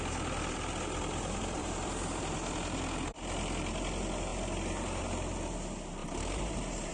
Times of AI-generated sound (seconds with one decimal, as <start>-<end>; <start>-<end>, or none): 1.6-2.2; 6.0-6.9